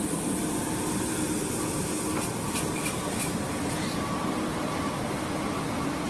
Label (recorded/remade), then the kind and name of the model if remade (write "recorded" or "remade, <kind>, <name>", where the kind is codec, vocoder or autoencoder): recorded